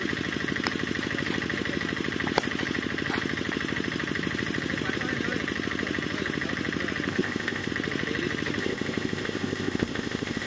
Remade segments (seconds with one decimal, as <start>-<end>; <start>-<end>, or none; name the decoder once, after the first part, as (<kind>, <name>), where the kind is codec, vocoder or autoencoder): 7.1-7.7 (codec, ZipCodec); 8.6-10.5